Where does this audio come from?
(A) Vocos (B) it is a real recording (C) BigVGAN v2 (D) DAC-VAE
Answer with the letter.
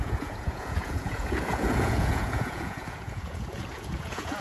A